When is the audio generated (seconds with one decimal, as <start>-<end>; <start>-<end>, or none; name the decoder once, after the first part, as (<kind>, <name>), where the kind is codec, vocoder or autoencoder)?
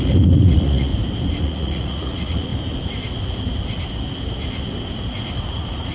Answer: 0.0-0.9 (vocoder, Vocos); 1.4-2.5; 5.4-5.9